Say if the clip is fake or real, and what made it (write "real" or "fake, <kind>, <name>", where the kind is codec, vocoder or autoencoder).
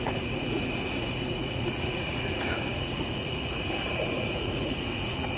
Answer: fake, vocoder, Vocos